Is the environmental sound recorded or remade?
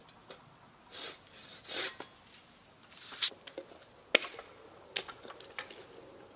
recorded